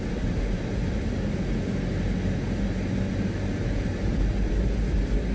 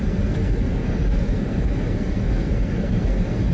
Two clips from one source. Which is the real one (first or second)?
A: first